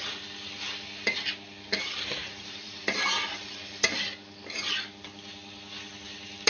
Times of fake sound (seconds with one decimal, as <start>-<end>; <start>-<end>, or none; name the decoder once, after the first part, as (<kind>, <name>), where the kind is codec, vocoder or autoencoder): 2.2-3.8 (vocoder, BigVGAN v2)